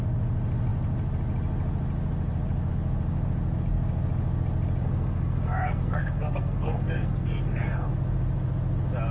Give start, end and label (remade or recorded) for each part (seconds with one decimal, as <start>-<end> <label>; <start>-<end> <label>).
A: 0.0-4.8 recorded; 4.8-7.9 remade; 7.9-9.1 recorded